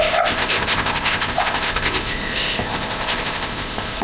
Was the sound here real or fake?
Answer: fake